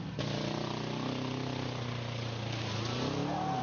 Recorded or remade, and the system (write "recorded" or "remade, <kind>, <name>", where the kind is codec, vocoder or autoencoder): recorded